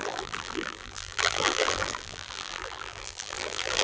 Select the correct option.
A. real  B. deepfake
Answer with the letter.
B